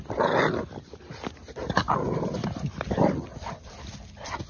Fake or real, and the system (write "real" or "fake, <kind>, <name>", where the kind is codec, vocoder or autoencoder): real